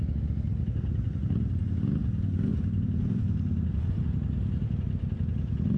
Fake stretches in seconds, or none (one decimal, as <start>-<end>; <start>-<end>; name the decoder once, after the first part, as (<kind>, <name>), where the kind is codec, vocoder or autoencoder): none